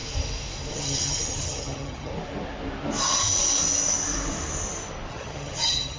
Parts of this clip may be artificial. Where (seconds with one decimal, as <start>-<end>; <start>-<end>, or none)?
0.7-2.1; 5.1-6.0